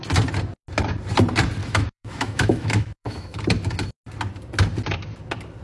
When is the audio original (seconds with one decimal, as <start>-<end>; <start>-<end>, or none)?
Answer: 0.0-1.6; 3.4-5.6